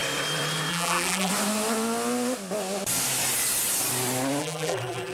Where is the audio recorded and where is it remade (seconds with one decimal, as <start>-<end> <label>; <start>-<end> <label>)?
0.0-0.7 recorded; 0.7-1.3 remade; 1.3-4.4 recorded; 4.4-5.1 remade